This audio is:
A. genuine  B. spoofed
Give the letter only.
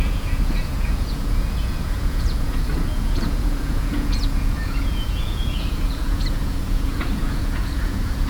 B